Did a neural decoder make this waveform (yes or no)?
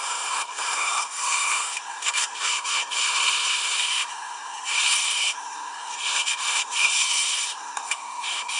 yes